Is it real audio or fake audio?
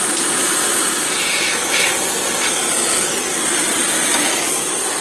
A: real